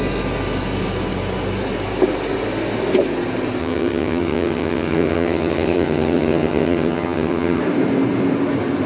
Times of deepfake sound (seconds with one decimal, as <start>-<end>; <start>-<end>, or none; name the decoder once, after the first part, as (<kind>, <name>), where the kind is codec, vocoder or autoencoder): 3.6-7.6 (vocoder, HiFi-GAN)